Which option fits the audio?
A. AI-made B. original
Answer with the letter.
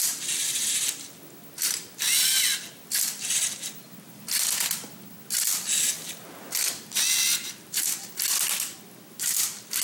B